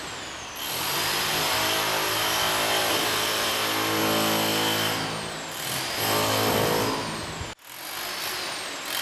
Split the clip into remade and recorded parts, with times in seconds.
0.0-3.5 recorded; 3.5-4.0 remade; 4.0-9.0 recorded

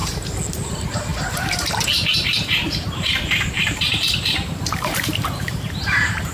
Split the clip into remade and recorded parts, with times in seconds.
0.0-0.5 recorded; 0.5-6.3 remade

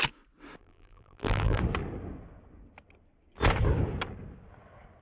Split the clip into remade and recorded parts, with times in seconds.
0.0-0.6 recorded; 0.6-1.6 remade; 1.6-5.0 recorded

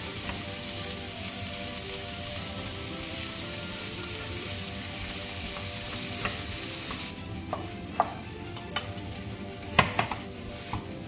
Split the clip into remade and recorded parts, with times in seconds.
0.0-2.3 recorded; 2.3-5.9 remade; 5.9-8.1 recorded; 8.1-10.6 remade; 10.6-11.1 recorded

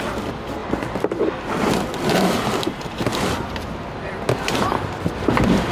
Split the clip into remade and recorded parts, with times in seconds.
0.0-5.7 recorded

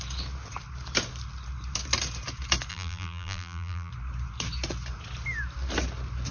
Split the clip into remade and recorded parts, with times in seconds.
0.0-2.7 recorded; 2.7-3.9 remade; 3.9-6.3 recorded